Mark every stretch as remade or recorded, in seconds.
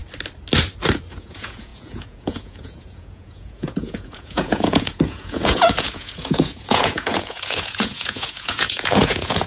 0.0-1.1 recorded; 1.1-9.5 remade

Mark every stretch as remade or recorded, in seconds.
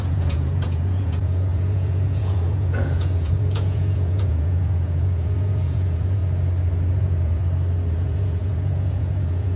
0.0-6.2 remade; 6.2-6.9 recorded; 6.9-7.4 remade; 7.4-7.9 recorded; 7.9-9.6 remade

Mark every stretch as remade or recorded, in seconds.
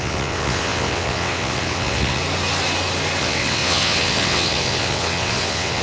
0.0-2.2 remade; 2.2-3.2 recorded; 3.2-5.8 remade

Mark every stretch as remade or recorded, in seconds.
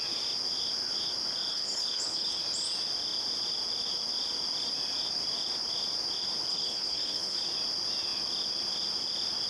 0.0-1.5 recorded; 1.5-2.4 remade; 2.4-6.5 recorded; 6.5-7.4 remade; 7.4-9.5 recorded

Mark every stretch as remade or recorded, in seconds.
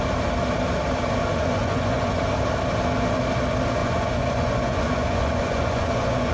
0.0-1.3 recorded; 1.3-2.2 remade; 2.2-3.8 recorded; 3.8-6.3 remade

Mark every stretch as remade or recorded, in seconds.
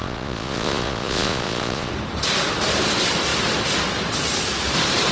0.0-1.9 remade; 1.9-5.1 recorded